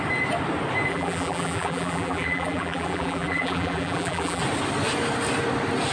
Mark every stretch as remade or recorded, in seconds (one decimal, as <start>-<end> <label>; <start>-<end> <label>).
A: 0.0-0.9 recorded; 0.9-4.4 remade; 4.4-5.9 recorded